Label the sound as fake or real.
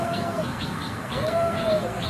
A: fake